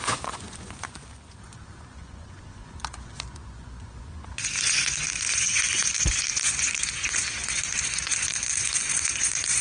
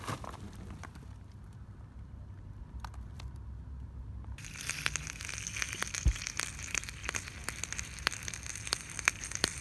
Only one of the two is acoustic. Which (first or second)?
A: second